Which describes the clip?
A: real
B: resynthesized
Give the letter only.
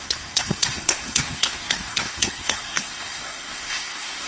B